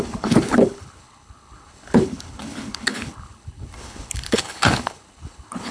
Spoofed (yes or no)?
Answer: yes